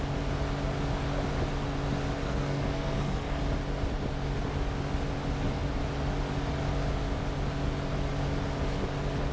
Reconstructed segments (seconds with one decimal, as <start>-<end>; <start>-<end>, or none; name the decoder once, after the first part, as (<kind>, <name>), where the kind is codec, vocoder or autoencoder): 2.2-3.4 (codec, SNAC)